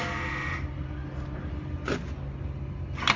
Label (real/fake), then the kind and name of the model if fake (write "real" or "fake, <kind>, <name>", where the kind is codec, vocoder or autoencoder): real